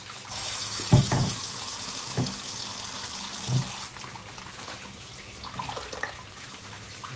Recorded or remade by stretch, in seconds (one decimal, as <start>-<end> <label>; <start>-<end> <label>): 0.0-2.7 remade; 2.7-4.5 recorded; 4.5-5.1 remade; 5.1-6.3 recorded; 6.3-7.2 remade